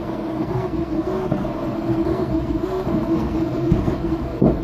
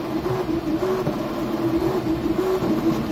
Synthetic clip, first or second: first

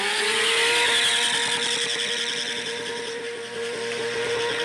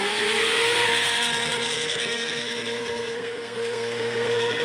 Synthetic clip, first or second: second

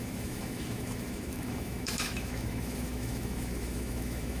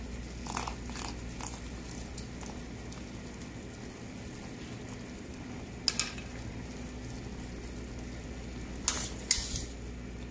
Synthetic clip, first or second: first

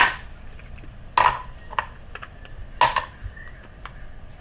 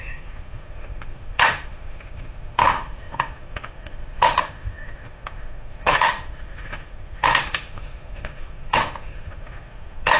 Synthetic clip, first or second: second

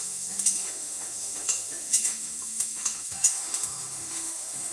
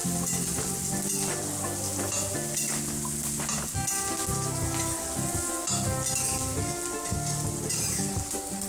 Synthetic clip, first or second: first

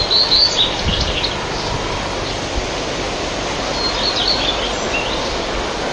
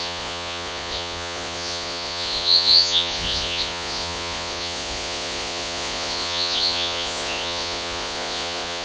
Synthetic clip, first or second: second